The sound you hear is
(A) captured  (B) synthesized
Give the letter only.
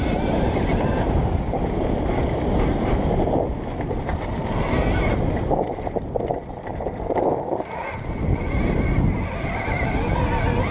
A